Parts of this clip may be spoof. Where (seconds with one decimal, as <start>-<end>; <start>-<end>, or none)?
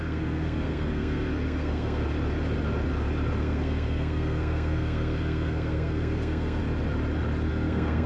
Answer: 0.0-2.0; 3.4-6.6; 7.5-8.1